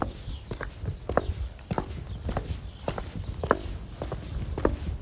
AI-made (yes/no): no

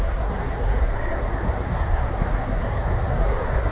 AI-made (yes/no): yes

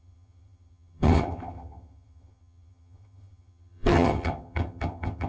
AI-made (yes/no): yes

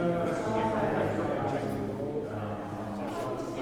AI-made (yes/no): no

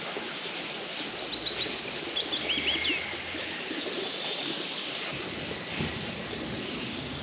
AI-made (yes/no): no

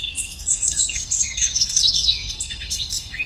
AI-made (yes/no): yes